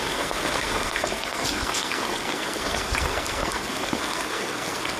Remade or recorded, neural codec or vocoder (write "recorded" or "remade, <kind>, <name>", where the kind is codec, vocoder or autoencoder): remade, codec, SNAC